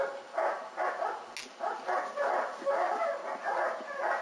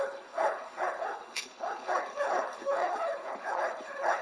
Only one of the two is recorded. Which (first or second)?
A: first